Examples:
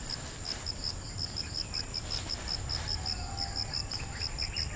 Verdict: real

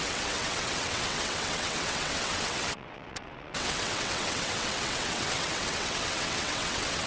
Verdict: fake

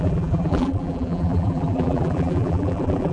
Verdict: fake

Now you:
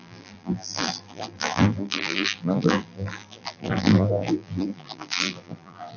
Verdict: fake